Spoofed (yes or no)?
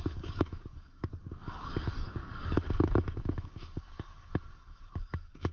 yes